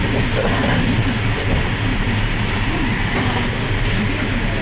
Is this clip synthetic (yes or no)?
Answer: no